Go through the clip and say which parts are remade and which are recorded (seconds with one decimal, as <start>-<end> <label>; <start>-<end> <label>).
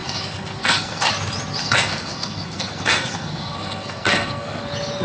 0.0-1.1 remade; 1.1-1.6 recorded; 1.6-4.6 remade; 4.6-5.0 recorded